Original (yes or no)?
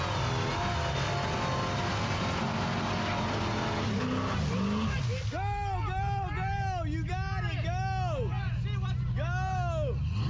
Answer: yes